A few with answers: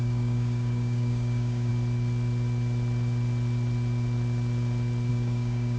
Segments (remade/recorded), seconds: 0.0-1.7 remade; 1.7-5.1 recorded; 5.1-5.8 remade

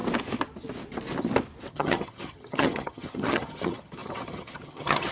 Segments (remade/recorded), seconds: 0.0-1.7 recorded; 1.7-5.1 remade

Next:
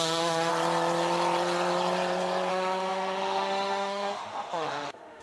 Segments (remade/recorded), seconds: 0.0-0.5 remade; 0.5-2.5 recorded; 2.5-5.2 remade

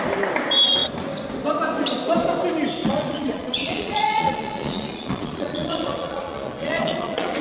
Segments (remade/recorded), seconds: 0.0-2.8 recorded; 2.8-7.4 remade